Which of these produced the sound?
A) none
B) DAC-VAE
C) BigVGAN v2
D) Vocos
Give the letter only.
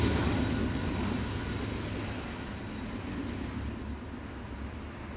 A